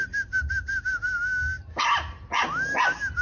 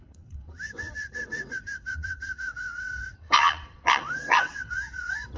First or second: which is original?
first